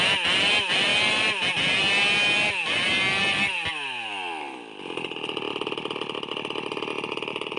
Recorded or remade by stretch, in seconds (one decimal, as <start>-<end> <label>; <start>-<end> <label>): 0.0-7.6 recorded